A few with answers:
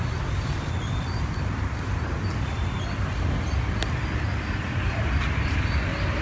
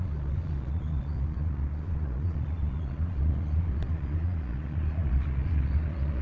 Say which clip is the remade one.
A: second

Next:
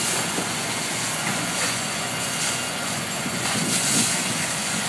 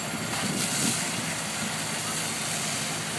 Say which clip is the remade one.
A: first